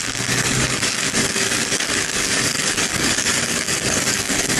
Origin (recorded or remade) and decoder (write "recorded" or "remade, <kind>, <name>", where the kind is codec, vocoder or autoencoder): remade, codec, DAC